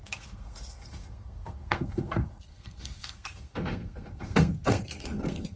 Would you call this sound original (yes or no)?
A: no